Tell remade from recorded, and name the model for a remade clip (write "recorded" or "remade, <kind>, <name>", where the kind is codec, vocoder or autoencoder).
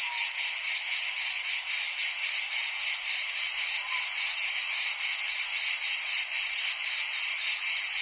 recorded